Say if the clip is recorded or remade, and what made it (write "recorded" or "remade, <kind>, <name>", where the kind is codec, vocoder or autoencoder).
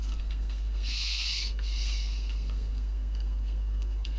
remade, codec, SNAC